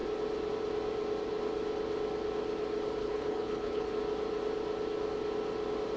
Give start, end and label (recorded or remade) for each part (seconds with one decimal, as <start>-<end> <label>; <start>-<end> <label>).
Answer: 0.0-3.0 recorded; 3.0-3.9 remade; 3.9-6.0 recorded